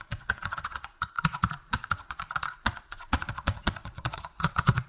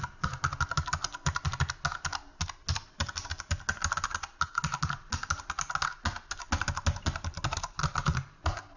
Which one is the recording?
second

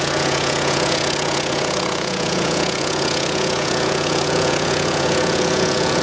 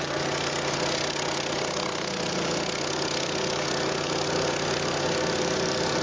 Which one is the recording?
second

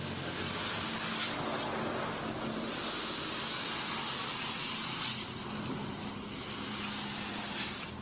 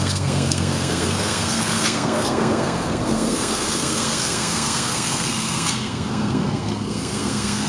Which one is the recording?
first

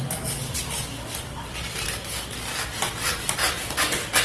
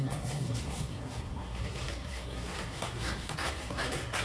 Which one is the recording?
first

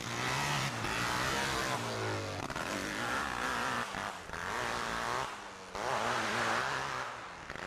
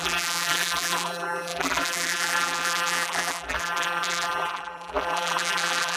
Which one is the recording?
first